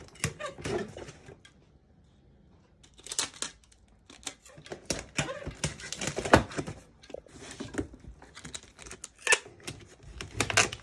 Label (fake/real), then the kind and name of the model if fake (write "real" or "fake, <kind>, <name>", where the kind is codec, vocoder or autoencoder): real